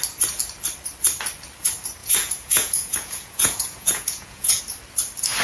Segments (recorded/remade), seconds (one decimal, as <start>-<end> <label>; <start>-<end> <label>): 0.0-2.0 recorded; 2.0-4.6 remade; 4.6-5.4 recorded